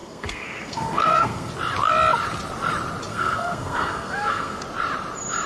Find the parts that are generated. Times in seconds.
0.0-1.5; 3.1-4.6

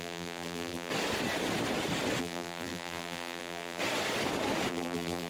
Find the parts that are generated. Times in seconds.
0.0-0.9; 2.2-3.8; 4.7-5.3